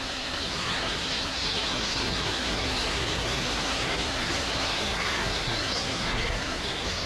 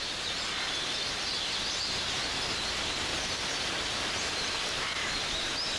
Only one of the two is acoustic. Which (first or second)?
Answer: second